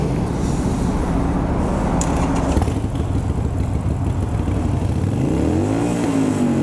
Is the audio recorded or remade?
recorded